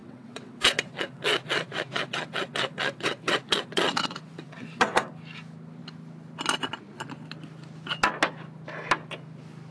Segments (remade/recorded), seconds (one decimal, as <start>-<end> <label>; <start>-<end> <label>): 0.0-5.1 remade; 5.1-9.7 recorded